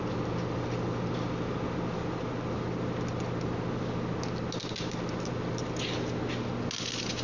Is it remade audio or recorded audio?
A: recorded